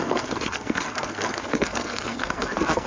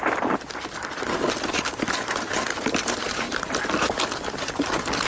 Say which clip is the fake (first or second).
first